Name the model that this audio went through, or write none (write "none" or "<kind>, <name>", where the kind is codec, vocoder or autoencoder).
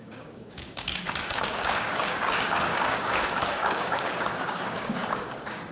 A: codec, DAC